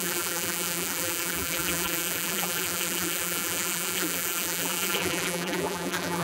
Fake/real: fake